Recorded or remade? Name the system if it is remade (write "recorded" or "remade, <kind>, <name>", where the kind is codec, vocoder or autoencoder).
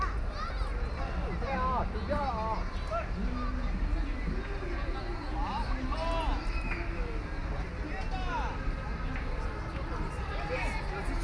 recorded